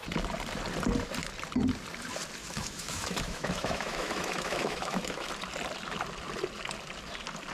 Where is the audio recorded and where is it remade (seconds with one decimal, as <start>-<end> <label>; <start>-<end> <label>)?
0.0-2.4 recorded; 2.4-5.3 remade; 5.3-7.5 recorded